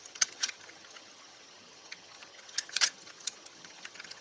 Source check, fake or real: fake